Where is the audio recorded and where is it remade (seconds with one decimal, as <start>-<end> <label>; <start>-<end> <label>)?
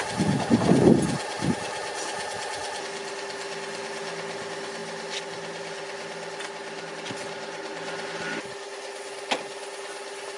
0.0-10.4 recorded